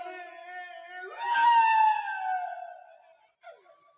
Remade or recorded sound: recorded